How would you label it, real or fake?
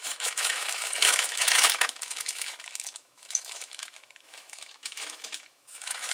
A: fake